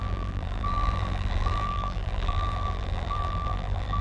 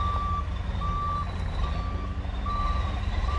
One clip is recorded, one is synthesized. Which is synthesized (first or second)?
first